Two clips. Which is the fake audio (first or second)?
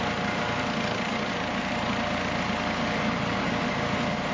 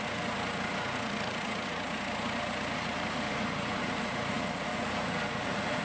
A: second